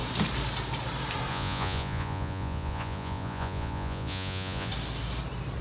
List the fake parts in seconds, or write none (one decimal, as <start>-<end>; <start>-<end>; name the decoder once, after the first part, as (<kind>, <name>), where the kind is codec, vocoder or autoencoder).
1.3-4.7 (vocoder, Vocos)